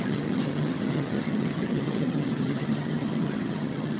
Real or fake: fake